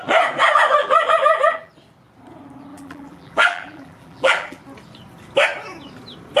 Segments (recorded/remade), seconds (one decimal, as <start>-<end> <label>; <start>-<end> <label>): 0.0-0.8 recorded; 0.8-1.7 remade; 1.7-2.7 recorded; 2.7-4.6 remade; 4.6-6.4 recorded